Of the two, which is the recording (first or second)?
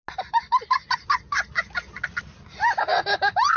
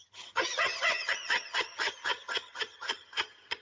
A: first